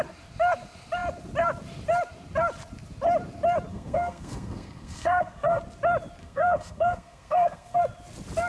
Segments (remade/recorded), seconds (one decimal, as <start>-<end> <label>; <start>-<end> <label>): 0.0-3.7 recorded; 3.7-5.6 remade; 5.6-6.2 recorded; 6.2-7.8 remade; 7.8-8.5 recorded